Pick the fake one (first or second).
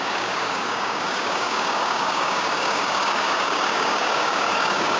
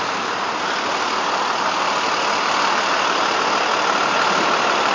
first